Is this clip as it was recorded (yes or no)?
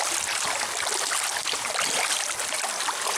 yes